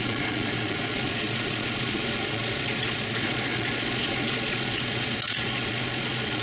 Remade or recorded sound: remade